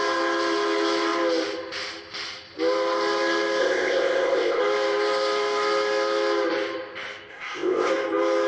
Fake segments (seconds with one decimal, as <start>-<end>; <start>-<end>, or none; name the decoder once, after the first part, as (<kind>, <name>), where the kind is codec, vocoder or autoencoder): 3.6-4.6 (codec, ZipCodec); 7.3-7.9